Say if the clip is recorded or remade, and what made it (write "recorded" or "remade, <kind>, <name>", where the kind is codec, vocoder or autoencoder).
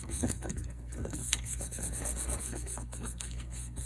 remade, codec, SNAC